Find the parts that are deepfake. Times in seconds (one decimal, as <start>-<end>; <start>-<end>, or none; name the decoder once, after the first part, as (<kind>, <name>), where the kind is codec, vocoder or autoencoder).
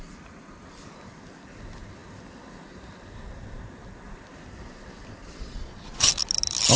5.2-6.1 (vocoder, Vocos)